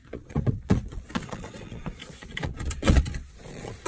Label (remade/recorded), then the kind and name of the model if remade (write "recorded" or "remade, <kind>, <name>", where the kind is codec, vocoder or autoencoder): remade, vocoder, Vocos